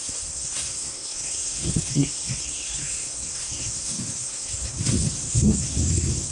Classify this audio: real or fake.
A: fake